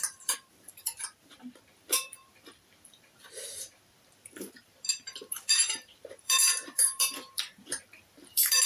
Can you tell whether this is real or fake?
fake